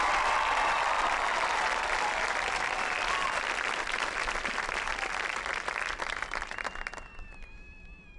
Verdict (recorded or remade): remade